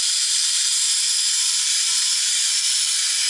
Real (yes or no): no